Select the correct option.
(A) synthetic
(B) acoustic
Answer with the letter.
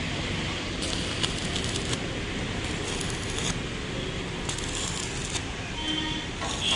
B